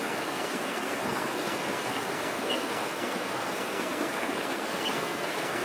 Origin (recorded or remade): remade